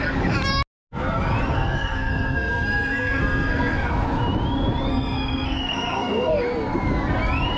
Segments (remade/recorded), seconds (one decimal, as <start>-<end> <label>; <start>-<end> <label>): 0.0-1.5 recorded; 1.5-3.9 remade; 3.9-4.9 recorded; 4.9-6.4 remade; 6.4-7.6 recorded